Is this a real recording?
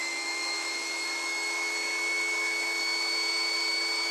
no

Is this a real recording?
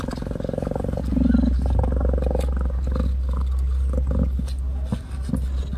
yes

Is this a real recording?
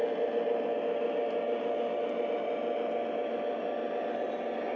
yes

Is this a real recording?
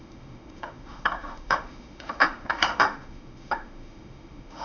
no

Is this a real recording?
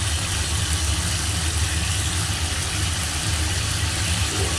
yes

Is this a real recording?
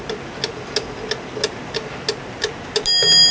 yes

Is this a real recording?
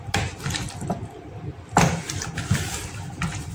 yes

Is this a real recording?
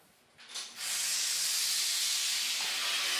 yes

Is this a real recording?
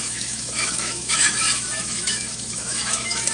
no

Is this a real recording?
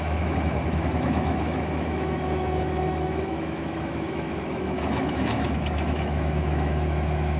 no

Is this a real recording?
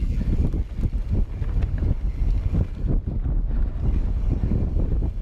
yes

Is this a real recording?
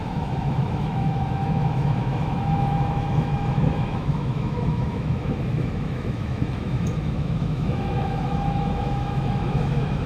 no